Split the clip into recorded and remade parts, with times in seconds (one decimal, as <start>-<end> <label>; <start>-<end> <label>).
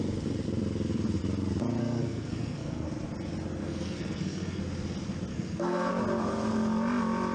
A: 0.0-1.8 recorded; 1.8-2.9 remade; 2.9-3.6 recorded; 3.6-4.6 remade; 4.6-5.3 recorded; 5.3-5.9 remade; 5.9-7.3 recorded